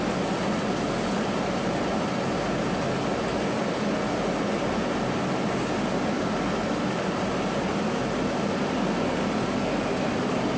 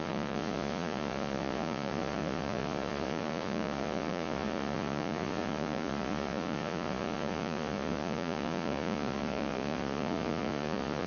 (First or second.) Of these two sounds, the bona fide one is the first